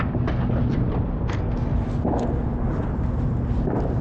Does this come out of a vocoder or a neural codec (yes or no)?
no